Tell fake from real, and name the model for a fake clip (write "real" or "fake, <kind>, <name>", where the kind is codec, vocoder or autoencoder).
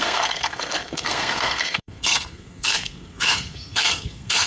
fake, codec, SNAC